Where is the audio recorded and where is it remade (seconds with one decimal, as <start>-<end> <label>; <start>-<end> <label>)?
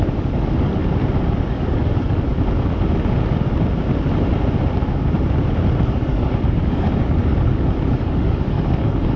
0.0-0.8 remade; 0.8-1.5 recorded; 1.5-2.3 remade; 2.3-5.8 recorded; 5.8-9.2 remade